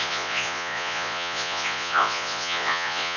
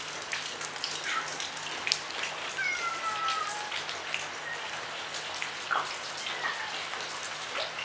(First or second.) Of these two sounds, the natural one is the second